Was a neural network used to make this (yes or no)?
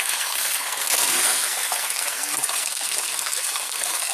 yes